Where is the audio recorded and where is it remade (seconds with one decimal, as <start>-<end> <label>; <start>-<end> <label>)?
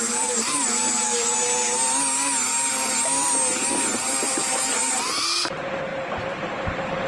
0.0-1.3 remade; 1.3-4.3 recorded; 4.3-7.1 remade